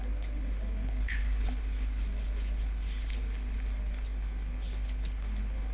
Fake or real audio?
fake